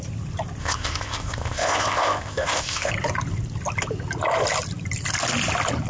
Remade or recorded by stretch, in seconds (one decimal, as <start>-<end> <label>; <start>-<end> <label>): 0.0-0.6 recorded; 0.6-2.9 remade; 2.9-5.9 recorded